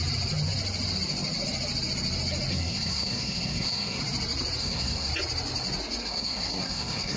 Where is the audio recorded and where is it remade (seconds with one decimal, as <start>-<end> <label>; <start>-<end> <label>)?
0.0-2.5 recorded; 2.5-4.0 remade; 4.0-4.6 recorded; 4.6-5.1 remade; 5.1-6.0 recorded; 6.0-7.2 remade